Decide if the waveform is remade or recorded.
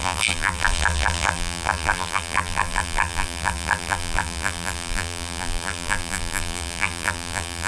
remade